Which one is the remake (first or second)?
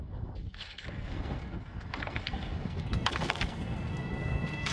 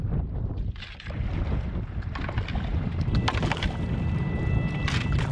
first